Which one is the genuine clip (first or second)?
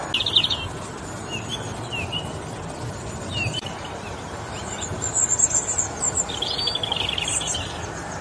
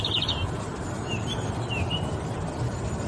first